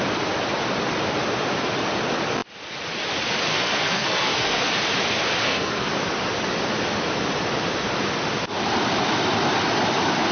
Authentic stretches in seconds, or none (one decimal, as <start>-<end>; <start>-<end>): 0.0-3.5; 4.7-5.4; 5.9-10.3